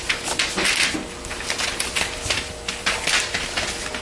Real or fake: real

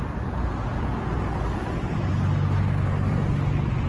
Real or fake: real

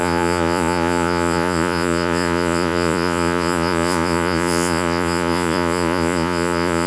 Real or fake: fake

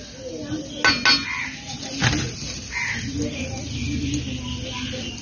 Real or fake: real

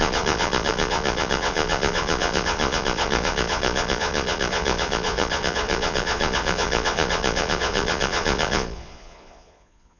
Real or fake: fake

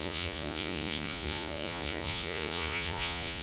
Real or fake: fake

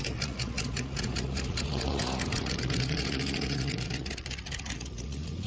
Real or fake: fake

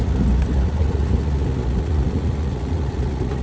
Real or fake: fake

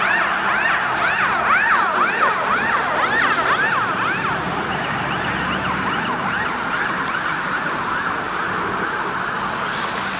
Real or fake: real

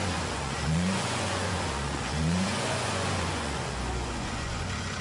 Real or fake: fake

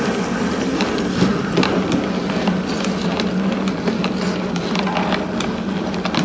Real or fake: real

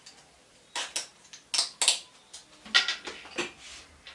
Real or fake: real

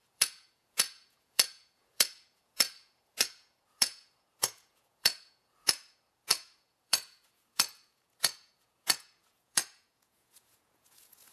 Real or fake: fake